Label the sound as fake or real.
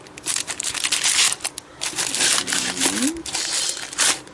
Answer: real